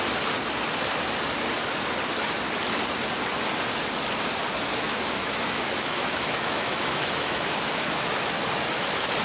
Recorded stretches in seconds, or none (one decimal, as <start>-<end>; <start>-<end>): 0.0-4.7; 8.3-9.2